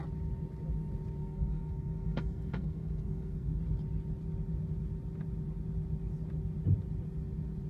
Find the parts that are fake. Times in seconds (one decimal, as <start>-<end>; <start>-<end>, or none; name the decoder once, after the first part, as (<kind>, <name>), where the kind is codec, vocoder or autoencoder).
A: 1.2-3.6 (codec, SNAC)